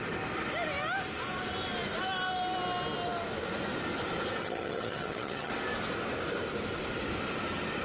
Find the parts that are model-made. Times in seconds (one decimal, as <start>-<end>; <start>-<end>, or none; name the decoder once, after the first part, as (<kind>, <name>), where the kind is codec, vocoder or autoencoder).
4.4-5.5 (vocoder, HiFi-GAN)